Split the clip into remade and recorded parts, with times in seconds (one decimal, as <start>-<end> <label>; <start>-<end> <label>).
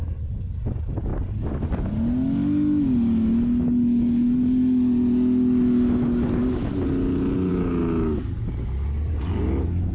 0.0-9.9 recorded